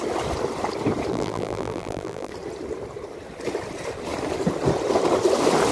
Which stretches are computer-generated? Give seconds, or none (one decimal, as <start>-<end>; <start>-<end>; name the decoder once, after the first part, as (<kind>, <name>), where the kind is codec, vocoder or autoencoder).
1.1-2.3 (vocoder, BigVGAN v2)